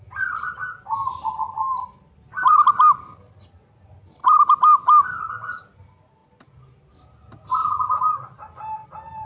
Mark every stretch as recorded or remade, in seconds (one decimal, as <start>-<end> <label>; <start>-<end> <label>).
0.0-9.3 recorded